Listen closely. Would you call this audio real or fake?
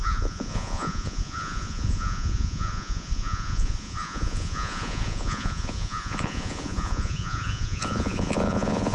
fake